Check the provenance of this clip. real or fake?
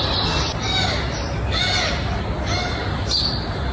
real